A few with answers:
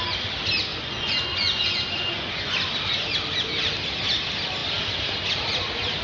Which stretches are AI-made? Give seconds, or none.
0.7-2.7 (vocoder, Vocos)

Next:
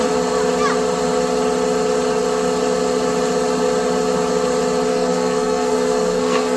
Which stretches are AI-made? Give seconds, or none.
4.9-6.6 (codec, SNAC)

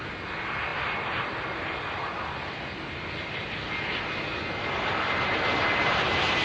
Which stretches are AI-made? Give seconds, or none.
none

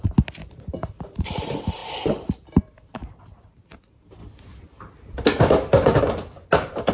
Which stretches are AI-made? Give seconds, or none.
0.4-1.2 (vocoder, BigVGAN v2); 1.8-3.2

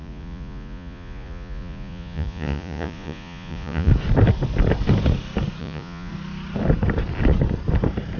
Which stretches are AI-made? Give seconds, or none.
0.0-3.9 (vocoder, Vocos); 5.6-6.1

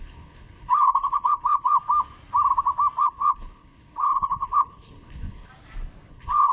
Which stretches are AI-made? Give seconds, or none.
0.0-1.8 (codec, HILCodec); 3.0-5.5; 6.1-6.5